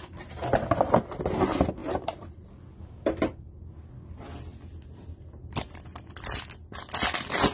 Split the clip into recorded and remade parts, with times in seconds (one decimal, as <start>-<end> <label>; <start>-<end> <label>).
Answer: 0.0-1.8 recorded; 1.8-2.5 remade; 2.5-7.5 recorded